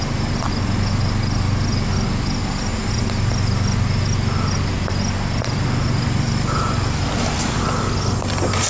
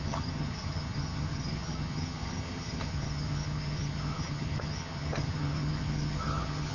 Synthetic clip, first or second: second